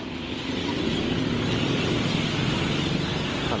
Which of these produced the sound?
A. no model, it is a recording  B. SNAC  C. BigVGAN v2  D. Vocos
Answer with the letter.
A